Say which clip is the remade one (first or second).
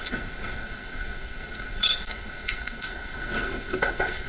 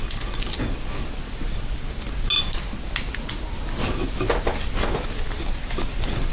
first